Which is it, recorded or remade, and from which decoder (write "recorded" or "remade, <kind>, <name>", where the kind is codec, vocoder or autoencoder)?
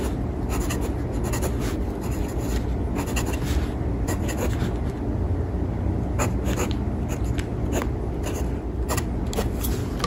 recorded